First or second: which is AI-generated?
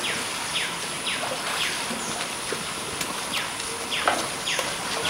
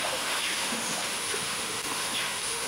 second